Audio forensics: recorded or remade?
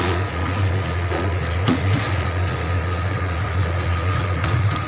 remade